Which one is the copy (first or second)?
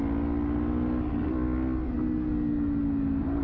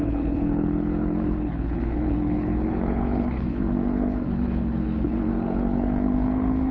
second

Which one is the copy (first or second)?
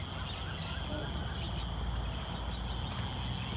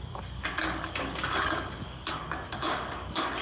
second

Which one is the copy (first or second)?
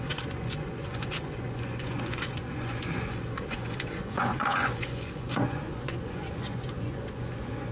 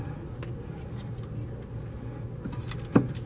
first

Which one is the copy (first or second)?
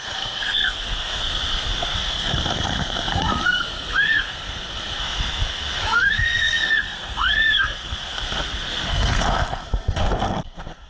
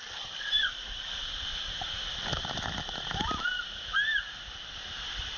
first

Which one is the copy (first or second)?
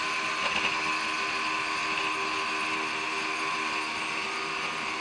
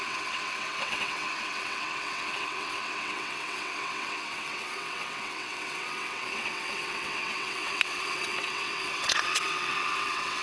second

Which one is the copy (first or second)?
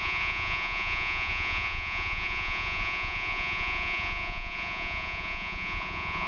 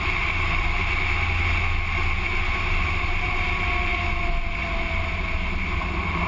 first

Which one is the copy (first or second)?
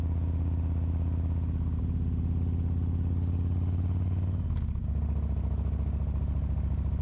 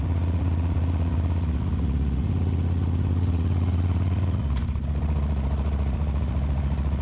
second